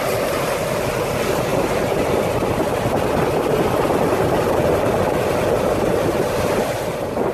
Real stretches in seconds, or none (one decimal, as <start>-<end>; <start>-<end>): 0.0-7.3